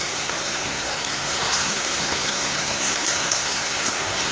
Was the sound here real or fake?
fake